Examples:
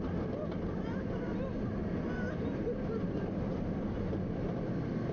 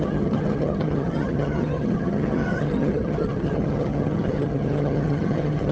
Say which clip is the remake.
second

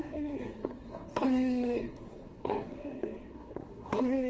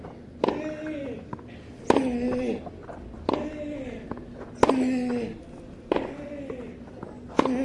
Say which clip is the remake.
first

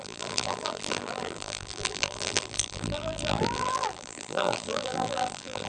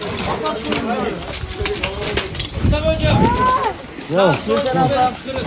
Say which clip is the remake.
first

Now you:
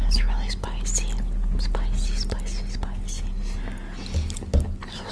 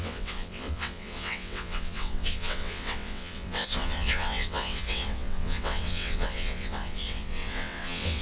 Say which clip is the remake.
second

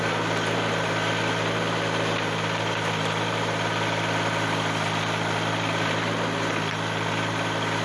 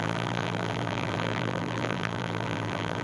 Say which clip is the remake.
second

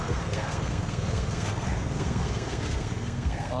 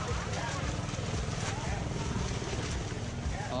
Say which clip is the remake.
first